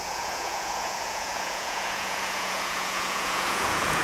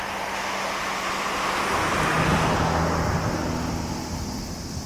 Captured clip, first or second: second